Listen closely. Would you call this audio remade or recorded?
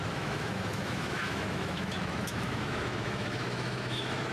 remade